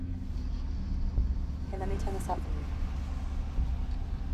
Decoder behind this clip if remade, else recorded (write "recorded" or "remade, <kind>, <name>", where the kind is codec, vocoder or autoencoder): recorded